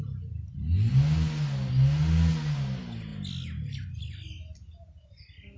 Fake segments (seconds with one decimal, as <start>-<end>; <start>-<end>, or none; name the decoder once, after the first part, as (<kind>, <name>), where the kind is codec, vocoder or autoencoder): none